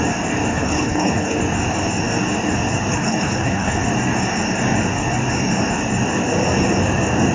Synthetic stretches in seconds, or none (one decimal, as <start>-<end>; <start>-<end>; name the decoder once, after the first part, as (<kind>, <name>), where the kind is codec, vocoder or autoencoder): 0.5-1.4 (codec, HILCodec); 2.9-3.8